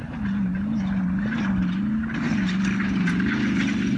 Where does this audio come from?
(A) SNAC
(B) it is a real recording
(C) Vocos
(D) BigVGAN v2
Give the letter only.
B